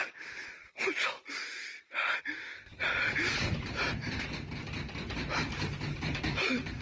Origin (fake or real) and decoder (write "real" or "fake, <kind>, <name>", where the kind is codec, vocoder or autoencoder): real